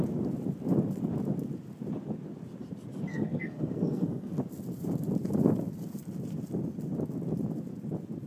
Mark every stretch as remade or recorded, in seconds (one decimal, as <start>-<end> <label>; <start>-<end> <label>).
0.0-3.1 recorded; 3.1-4.3 remade; 4.3-8.3 recorded

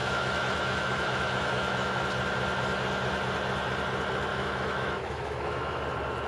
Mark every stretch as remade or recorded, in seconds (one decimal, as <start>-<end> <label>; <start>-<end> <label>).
0.0-2.0 remade; 2.0-4.3 recorded; 4.3-5.8 remade; 5.8-6.3 recorded

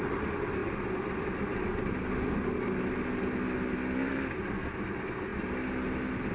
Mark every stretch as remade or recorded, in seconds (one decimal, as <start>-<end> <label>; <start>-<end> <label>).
0.0-6.3 recorded

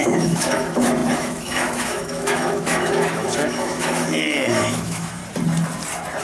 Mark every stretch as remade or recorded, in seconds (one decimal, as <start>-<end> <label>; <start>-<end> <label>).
0.0-5.2 remade; 5.2-6.2 recorded

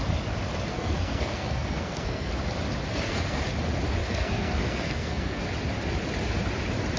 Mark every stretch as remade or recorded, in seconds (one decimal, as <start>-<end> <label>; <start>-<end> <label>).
0.0-0.7 recorded; 0.7-2.3 remade; 2.3-2.9 recorded; 2.9-3.4 remade; 3.4-4.0 recorded; 4.0-5.4 remade; 5.4-7.0 recorded

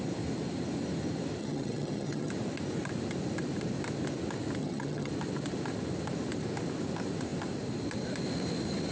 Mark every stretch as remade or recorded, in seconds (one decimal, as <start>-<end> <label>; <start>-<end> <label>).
0.0-1.4 recorded; 1.4-2.3 remade; 2.3-4.6 recorded; 4.6-5.1 remade; 5.1-8.9 recorded

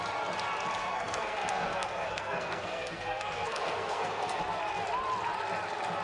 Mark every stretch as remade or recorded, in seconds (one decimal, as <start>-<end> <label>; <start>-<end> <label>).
0.0-0.8 recorded; 0.8-4.4 remade; 4.4-6.0 recorded